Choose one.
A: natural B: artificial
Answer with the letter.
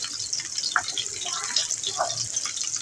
A